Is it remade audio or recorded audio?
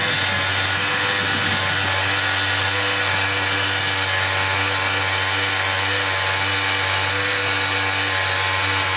recorded